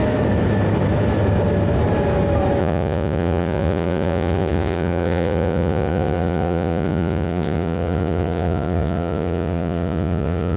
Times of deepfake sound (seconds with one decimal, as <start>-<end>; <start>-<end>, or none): 2.6-10.6